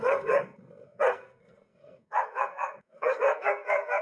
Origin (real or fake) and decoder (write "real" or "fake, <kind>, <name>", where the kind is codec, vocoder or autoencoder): fake, codec, SNAC